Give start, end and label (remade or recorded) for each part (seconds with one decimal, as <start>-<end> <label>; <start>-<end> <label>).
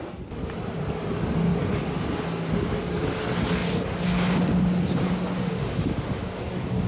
0.0-5.4 recorded; 5.4-6.4 remade; 6.4-6.9 recorded